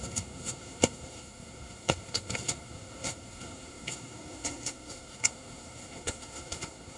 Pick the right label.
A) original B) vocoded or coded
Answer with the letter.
B